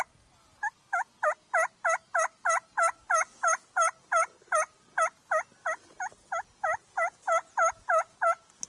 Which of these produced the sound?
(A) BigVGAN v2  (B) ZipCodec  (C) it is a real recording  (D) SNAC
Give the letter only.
C